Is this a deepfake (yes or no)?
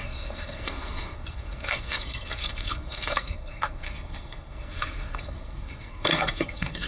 yes